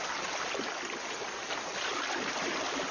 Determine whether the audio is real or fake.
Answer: real